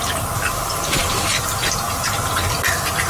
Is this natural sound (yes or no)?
yes